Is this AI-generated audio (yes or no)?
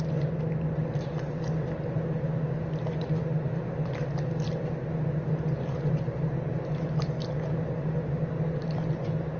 no